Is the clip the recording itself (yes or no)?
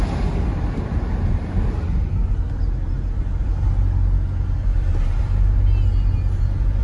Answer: yes